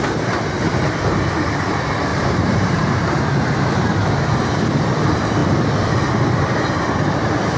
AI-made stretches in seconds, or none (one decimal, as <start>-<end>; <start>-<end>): 2.1-3.7